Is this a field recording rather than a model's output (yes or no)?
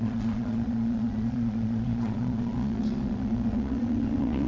no